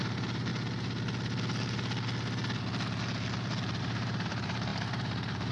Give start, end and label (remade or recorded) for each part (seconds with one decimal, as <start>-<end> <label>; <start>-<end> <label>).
0.0-0.5 remade; 0.5-3.8 recorded; 3.8-5.5 remade